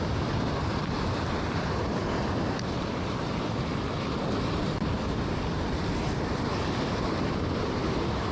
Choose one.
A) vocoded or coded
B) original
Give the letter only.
A